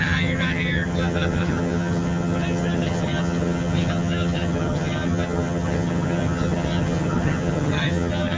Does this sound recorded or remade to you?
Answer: remade